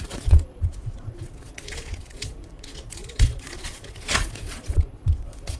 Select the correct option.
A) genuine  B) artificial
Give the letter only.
B